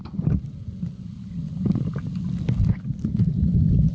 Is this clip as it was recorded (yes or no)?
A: yes